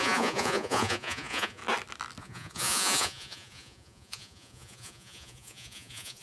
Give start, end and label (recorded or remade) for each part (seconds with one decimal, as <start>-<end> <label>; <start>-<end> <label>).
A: 0.0-1.6 remade; 1.6-2.2 recorded; 2.2-6.2 remade